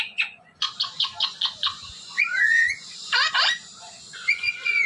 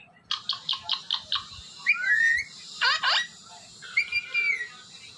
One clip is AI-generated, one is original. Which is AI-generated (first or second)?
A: first